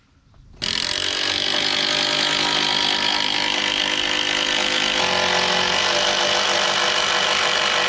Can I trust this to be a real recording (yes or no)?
yes